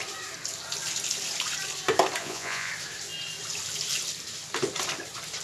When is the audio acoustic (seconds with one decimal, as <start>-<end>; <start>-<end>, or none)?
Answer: 0.0-2.2; 2.7-5.4